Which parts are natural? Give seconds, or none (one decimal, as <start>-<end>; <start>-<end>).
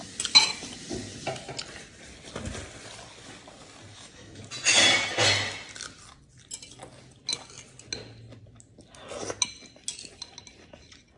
0.0-3.9; 4.4-11.2